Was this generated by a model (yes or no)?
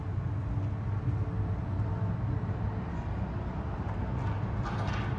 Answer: no